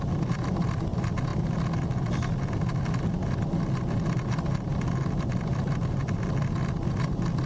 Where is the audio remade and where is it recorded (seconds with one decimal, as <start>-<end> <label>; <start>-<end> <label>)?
0.0-7.5 recorded